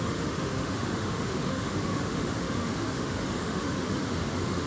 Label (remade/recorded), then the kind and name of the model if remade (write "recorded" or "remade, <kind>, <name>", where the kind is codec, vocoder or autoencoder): remade, autoencoder, DAC-VAE